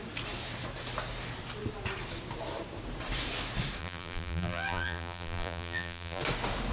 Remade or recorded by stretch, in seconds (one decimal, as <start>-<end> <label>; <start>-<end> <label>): 0.0-3.8 recorded; 3.8-6.2 remade; 6.2-6.7 recorded